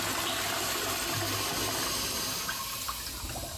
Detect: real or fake real